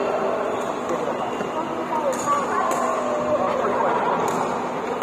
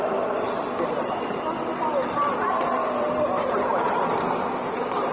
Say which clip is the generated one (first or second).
second